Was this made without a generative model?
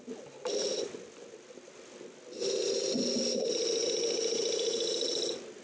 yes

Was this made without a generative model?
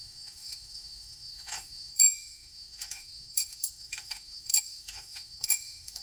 no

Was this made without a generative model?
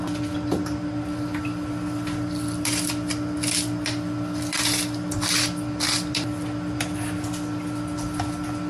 yes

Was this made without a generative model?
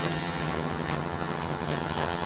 no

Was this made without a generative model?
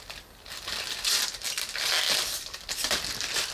yes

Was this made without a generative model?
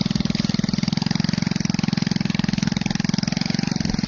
yes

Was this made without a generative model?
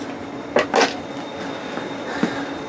yes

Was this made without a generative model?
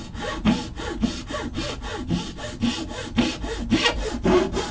yes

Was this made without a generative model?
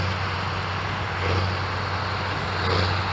yes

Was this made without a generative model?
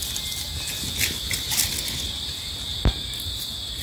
yes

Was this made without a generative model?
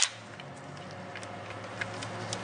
yes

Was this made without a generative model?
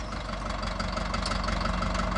yes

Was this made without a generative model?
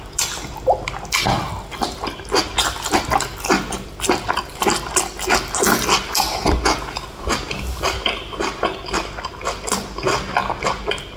yes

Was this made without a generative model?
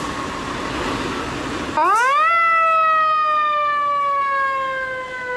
yes